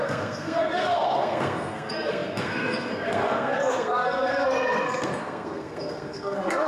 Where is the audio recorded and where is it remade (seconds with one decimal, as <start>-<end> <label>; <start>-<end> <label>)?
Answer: 0.0-6.7 remade